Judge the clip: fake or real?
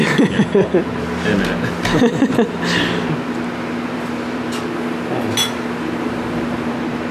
real